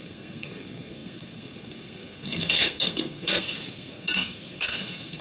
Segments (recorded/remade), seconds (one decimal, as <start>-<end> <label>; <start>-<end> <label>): 0.0-5.2 remade